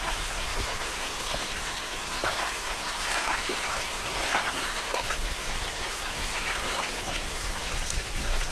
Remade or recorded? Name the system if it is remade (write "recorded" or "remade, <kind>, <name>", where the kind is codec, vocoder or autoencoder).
remade, codec, SNAC